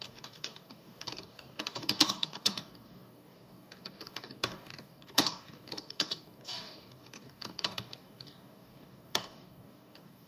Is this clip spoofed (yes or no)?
yes